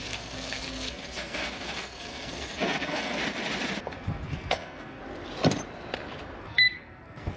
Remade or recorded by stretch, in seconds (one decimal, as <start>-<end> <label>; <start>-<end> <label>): 0.0-3.2 remade; 3.2-3.8 recorded; 3.8-5.0 remade; 5.0-6.4 recorded; 6.4-7.4 remade